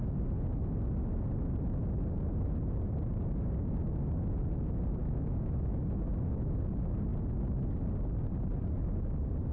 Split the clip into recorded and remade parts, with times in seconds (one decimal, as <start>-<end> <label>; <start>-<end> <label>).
0.0-5.0 recorded; 5.0-5.8 remade; 5.8-9.5 recorded